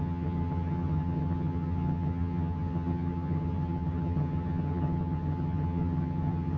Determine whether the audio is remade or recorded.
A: remade